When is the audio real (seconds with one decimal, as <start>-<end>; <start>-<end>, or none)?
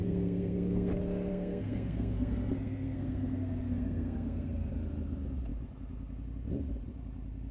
0.9-1.3; 4.7-7.5